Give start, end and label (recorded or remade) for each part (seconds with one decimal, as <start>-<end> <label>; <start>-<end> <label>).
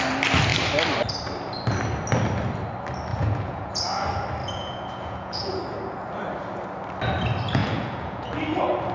0.0-3.1 recorded; 3.1-3.7 remade; 3.7-4.4 recorded; 4.4-5.6 remade; 5.6-7.6 recorded; 7.6-8.3 remade; 8.3-8.9 recorded